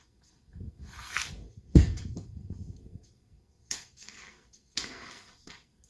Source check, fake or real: fake